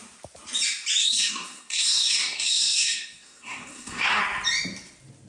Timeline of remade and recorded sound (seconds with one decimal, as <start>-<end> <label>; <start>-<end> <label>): 0.0-1.0 recorded; 1.0-4.2 remade; 4.2-5.3 recorded